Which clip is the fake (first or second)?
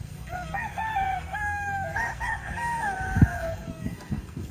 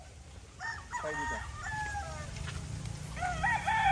first